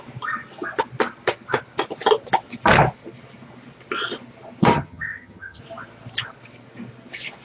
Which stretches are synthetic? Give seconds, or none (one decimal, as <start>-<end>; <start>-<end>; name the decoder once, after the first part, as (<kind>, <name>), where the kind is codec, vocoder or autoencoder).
4.7-5.6 (vocoder, HiFi-GAN)